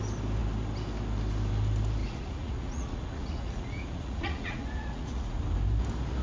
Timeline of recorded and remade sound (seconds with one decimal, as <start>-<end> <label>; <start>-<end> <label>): 0.0-2.0 recorded; 2.0-5.4 remade; 5.4-6.2 recorded